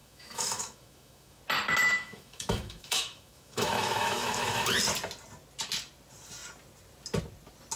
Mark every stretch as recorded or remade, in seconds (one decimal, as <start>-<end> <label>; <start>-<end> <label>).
0.0-1.4 remade; 1.4-1.8 recorded; 1.8-4.7 remade; 4.7-7.8 recorded